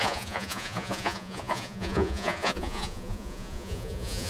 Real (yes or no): no